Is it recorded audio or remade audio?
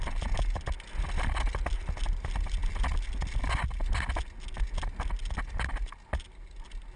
recorded